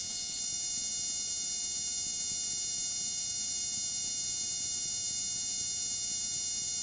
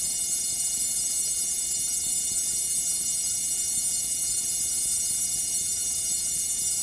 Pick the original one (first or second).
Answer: first